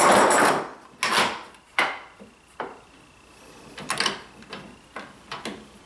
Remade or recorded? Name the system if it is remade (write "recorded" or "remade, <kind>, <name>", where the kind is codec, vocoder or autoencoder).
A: recorded